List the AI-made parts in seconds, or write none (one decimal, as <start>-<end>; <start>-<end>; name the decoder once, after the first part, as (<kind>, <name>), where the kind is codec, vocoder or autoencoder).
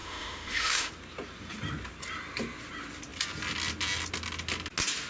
0.0-0.9 (autoencoder, DAC-VAE)